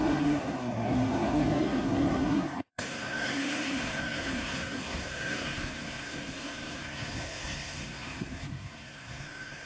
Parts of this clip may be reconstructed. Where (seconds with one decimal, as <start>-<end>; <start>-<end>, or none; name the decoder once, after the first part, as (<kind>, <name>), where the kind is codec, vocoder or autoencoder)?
0.0-9.7 (codec, SNAC)